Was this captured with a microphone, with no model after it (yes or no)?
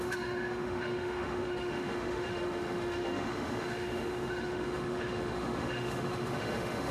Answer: no